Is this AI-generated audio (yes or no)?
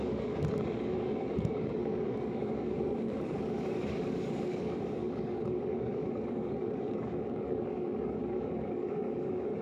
yes